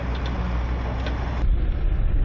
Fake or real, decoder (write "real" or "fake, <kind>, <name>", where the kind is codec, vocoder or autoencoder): real